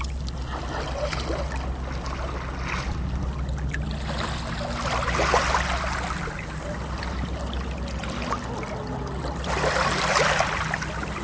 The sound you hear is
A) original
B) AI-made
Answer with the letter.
A